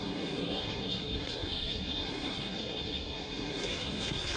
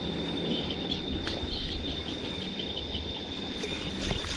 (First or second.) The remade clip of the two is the first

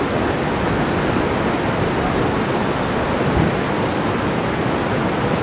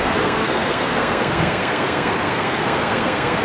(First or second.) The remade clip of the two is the second